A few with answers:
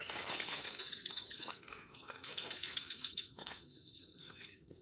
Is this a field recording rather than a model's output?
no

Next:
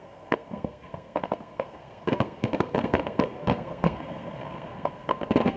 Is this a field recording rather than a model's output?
no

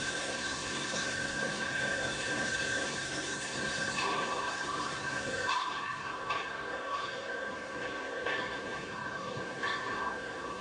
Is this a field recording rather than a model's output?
no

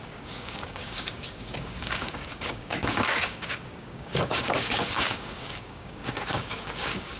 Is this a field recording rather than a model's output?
no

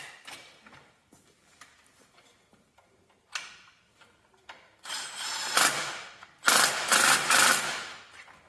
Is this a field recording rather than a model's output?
yes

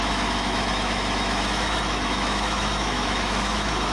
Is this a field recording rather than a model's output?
no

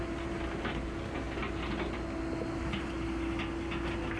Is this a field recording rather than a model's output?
yes